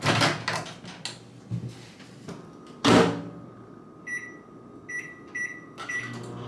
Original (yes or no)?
yes